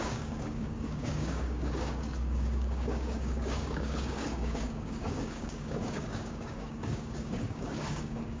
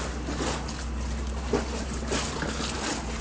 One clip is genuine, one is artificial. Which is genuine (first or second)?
second